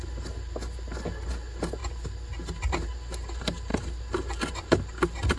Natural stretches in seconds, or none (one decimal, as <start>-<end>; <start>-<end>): 0.0-5.4